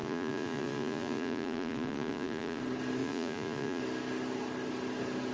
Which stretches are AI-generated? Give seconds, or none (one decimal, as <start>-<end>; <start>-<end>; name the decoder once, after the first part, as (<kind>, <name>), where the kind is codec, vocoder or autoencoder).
0.0-2.6 (vocoder, Vocos); 3.0-3.8